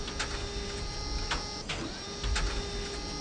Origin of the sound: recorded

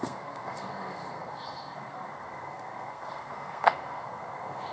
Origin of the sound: remade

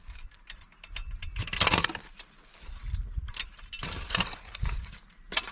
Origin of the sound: recorded